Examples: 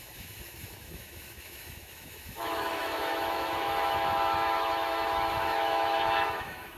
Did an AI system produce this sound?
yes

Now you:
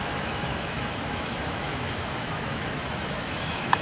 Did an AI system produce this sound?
yes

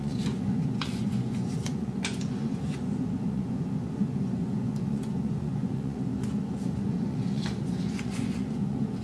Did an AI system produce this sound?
yes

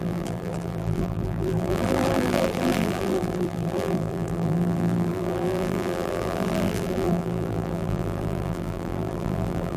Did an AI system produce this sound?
yes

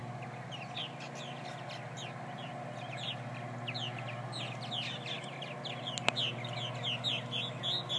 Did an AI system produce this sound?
no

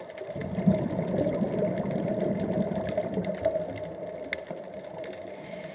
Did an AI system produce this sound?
no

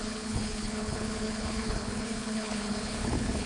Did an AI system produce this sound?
yes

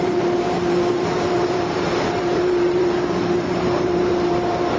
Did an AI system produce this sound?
yes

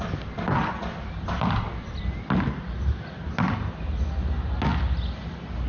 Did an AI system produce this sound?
no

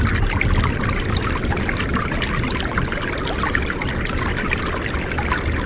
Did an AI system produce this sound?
no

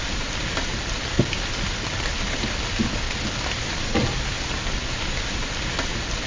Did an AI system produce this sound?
no